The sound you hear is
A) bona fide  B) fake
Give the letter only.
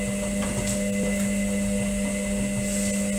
A